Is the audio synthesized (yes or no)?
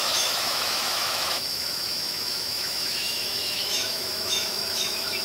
yes